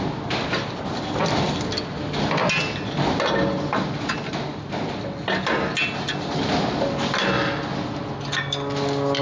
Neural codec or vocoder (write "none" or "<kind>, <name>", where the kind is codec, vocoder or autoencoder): none